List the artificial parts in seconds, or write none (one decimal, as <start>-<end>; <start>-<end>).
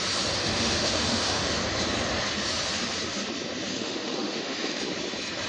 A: 0.4-1.5; 3.7-4.8